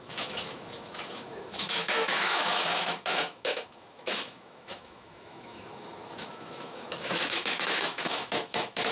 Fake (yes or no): yes